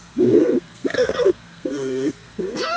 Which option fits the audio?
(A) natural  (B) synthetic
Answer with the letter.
B